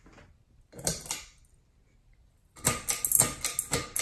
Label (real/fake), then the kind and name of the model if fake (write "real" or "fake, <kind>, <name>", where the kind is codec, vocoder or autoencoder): real